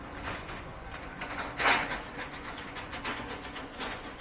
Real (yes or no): no